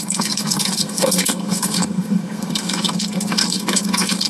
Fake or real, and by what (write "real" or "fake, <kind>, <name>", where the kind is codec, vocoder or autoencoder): fake, codec, SNAC